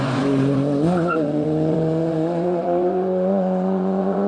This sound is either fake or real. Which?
fake